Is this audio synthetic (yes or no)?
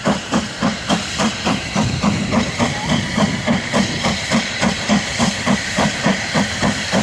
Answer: yes